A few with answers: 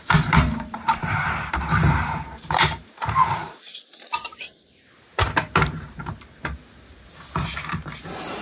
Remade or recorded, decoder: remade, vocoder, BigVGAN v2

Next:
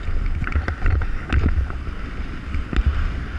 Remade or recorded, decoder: recorded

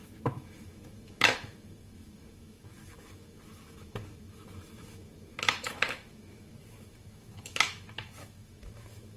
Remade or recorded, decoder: remade, autoencoder, DAC-VAE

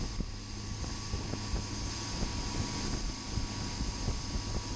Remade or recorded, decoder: recorded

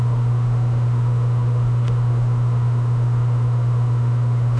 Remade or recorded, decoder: remade, autoencoder, DAC-VAE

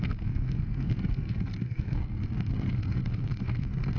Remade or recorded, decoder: remade, codec, SNAC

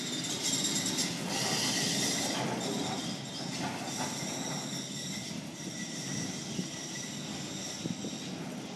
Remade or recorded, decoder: recorded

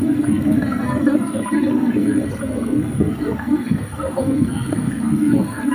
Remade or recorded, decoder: remade, codec, SNAC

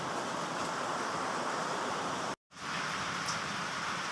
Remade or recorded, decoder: remade, vocoder, BigVGAN v2